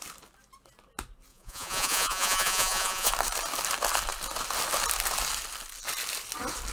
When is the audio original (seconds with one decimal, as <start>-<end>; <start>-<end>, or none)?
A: 0.0-1.3; 3.1-6.7